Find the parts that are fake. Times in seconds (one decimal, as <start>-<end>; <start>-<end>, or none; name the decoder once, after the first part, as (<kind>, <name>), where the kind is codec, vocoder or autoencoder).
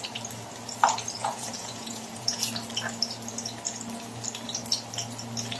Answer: 1.2-2.4 (vocoder, Vocos)